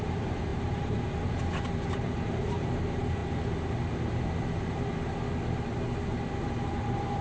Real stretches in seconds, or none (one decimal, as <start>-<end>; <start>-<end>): 3.2-6.7